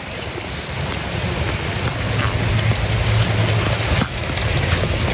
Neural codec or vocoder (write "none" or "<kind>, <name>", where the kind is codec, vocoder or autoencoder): none